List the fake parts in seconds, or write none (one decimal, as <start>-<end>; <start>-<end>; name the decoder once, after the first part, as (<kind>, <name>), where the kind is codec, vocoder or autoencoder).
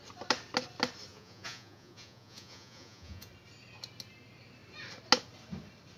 1.1-3.3 (vocoder, Vocos)